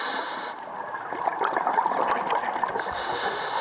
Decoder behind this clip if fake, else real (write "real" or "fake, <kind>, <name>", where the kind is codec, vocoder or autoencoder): real